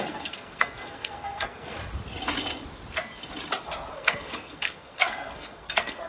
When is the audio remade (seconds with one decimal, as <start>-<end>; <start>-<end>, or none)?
0.0-1.8; 3.9-6.1